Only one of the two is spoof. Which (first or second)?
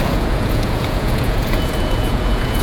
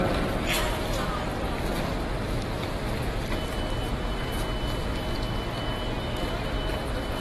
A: first